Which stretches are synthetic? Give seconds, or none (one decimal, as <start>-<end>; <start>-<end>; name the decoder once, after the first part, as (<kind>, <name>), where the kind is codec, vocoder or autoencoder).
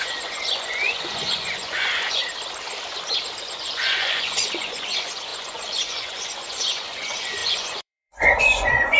0.0-2.2 (vocoder, Vocos); 3.4-9.0